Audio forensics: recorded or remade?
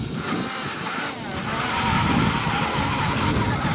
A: recorded